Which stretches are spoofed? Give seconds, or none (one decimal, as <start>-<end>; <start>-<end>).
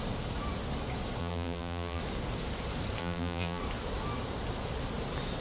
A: 1.2-2.0; 3.0-3.6